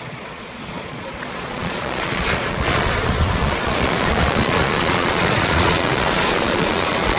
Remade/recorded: remade